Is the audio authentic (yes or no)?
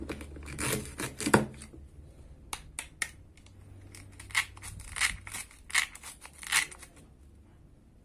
yes